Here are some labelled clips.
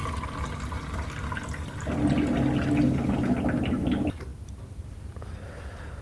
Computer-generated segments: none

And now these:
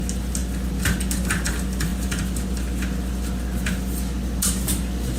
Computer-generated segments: none

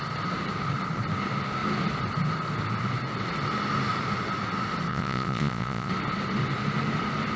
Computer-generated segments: 4.9-5.9

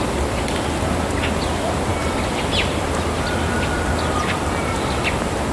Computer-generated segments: none